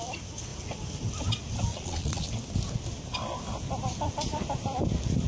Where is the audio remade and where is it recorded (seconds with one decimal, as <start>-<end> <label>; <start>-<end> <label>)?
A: 0.0-1.7 recorded; 1.7-2.3 remade; 2.3-5.3 recorded